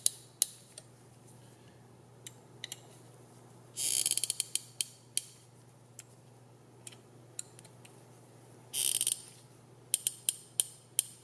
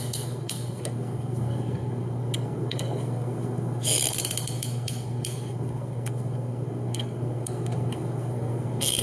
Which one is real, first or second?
first